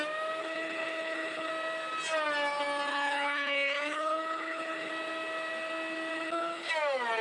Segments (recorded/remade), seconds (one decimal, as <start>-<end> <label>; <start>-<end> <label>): 0.0-0.4 recorded; 0.4-1.5 remade; 1.5-2.9 recorded; 2.9-4.9 remade; 4.9-6.1 recorded; 6.1-6.7 remade; 6.7-7.2 recorded